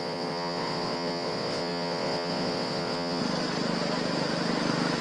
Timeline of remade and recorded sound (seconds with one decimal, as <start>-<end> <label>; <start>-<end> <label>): 0.0-3.2 remade; 3.2-5.0 recorded